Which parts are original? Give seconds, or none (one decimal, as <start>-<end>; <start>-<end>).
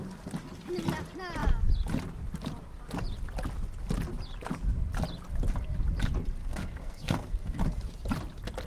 0.0-6.4; 7.6-8.7